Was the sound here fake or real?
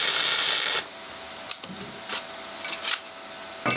real